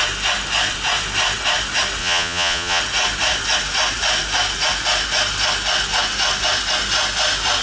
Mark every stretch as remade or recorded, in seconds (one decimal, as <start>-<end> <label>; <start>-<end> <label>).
0.0-2.0 recorded; 2.0-2.8 remade; 2.8-7.6 recorded